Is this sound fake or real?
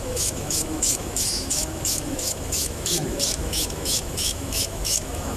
fake